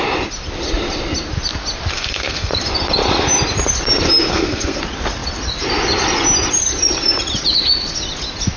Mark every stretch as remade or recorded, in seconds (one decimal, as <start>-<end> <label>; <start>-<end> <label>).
0.0-1.9 recorded; 1.9-2.5 remade; 2.5-4.3 recorded; 4.3-4.8 remade; 4.8-8.6 recorded